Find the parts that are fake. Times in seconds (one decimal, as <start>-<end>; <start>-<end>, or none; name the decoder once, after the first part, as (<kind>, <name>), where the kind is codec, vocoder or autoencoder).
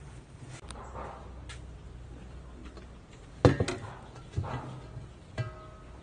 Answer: none